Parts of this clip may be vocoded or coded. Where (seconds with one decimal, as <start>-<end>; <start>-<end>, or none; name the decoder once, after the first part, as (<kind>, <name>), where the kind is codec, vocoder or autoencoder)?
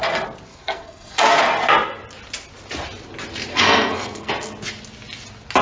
0.5-1.4 (codec, SNAC); 3.5-4.3